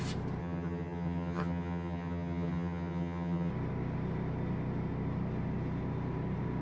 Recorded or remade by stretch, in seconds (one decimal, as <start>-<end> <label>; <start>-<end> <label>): 0.0-0.4 recorded; 0.4-3.5 remade; 3.5-6.6 recorded